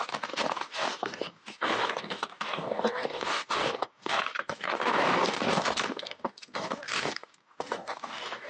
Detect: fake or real fake